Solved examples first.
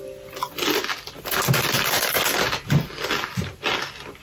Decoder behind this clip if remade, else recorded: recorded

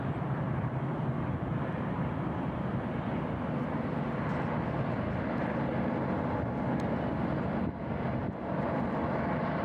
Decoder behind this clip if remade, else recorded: recorded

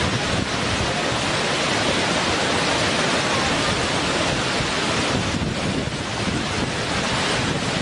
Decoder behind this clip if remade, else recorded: recorded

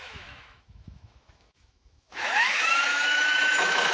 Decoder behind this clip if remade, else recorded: remade, autoencoder, DAC-VAE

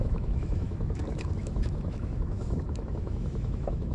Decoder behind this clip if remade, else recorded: remade, autoencoder, DAC-VAE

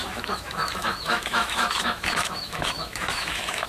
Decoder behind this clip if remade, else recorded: remade, autoencoder, DAC-VAE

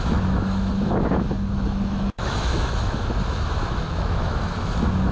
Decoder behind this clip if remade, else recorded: remade, autoencoder, DAC-VAE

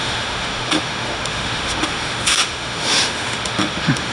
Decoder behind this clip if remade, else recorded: remade, autoencoder, DAC-VAE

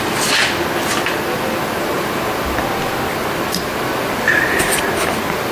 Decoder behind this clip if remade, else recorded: recorded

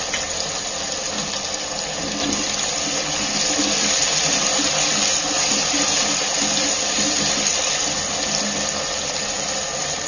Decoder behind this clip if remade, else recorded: recorded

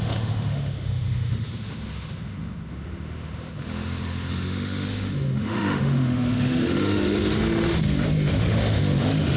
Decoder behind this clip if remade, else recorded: remade, autoencoder, DAC-VAE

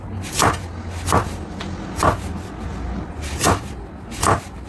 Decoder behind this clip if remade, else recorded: recorded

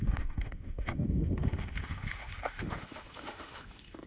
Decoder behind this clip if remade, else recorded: remade, autoencoder, DAC-VAE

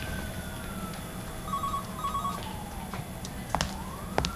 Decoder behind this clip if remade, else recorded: recorded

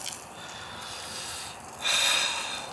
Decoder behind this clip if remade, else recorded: recorded